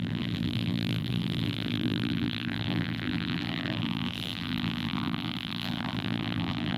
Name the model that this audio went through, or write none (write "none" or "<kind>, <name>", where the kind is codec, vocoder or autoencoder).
vocoder, BigVGAN v2